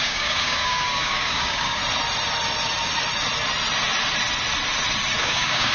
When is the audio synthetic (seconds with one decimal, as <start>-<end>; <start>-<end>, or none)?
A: 0.0-1.8; 5.2-5.7